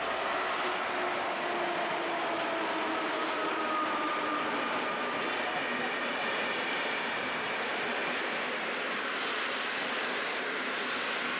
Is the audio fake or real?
real